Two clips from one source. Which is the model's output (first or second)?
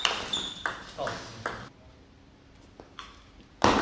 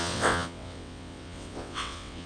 second